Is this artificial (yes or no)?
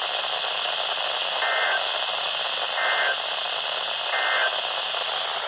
no